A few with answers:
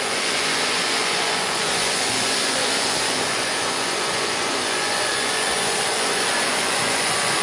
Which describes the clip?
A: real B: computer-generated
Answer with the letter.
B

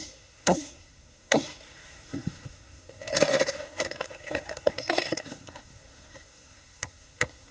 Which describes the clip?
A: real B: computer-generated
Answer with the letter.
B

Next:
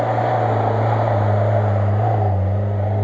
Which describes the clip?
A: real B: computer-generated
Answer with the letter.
A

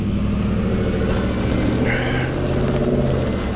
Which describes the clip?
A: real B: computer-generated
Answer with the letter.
A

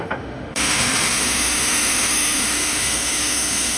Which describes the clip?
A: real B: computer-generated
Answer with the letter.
B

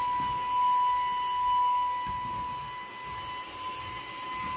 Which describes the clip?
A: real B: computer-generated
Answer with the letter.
A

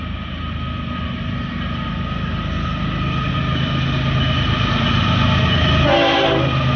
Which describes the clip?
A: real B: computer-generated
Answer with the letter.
A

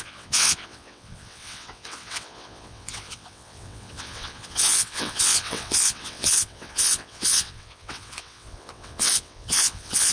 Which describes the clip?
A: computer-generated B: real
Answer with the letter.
A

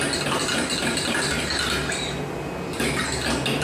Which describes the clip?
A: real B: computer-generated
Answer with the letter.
A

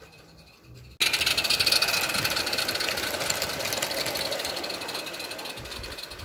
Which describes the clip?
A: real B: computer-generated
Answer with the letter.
A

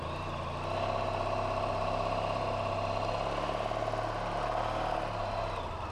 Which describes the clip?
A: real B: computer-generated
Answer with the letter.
A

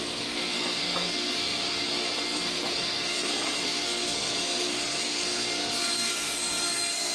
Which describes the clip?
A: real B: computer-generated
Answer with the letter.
B